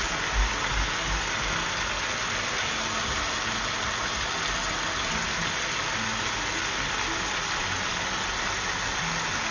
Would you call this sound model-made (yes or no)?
no